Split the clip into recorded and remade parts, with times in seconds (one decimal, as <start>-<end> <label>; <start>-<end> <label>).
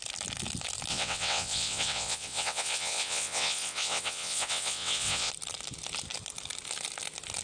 0.0-0.9 recorded; 0.9-5.3 remade; 5.3-7.4 recorded